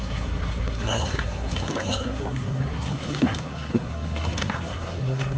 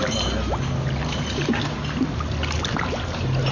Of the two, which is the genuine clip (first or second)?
second